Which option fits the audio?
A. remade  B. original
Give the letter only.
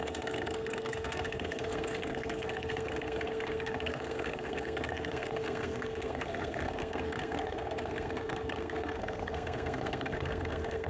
A